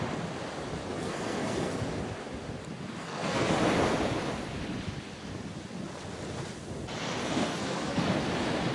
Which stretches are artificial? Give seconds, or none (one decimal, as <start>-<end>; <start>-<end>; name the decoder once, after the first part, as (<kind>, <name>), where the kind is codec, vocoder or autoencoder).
0.8-1.8 (codec, SNAC); 3.0-3.5; 7.2-8.0